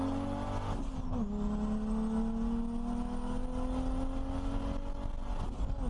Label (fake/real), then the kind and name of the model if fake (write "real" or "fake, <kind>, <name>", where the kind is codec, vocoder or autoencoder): real